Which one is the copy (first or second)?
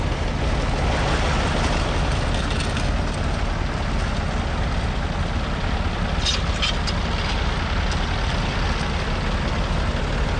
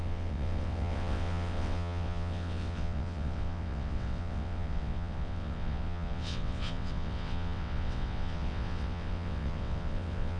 second